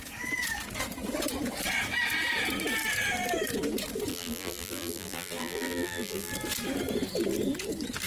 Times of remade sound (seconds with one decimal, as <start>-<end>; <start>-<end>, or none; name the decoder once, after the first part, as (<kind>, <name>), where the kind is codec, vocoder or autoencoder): 4.1-6.3 (vocoder, BigVGAN v2)